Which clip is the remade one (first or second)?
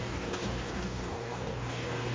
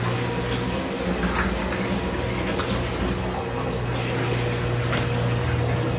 first